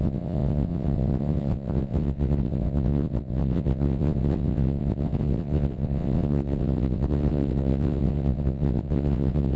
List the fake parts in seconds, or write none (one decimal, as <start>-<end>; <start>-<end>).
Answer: 0.0-9.6